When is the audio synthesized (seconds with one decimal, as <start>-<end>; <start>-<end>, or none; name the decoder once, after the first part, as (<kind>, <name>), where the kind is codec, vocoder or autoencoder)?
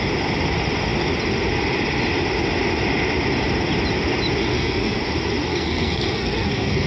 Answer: 4.5-5.0 (codec, SNAC); 5.5-6.9